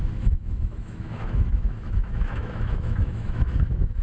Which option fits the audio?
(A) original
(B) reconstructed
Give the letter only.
B